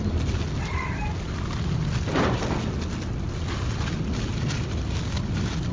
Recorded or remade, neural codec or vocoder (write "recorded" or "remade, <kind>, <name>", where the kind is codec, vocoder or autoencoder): recorded